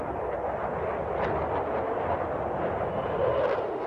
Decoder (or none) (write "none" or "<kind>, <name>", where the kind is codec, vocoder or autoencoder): none